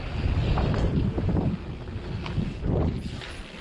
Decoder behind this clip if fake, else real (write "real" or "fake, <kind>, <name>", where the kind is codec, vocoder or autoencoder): real